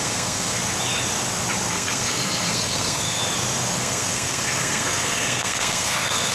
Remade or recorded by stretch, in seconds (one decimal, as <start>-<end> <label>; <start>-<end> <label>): 0.0-0.6 remade; 0.6-1.7 recorded; 1.7-3.2 remade; 3.2-3.8 recorded; 3.8-6.3 remade